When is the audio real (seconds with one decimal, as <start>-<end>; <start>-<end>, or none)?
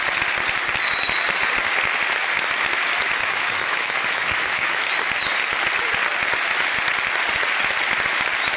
0.0-3.2; 5.1-8.6